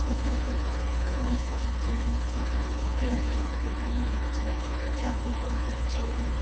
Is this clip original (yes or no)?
no